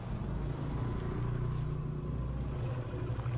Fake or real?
real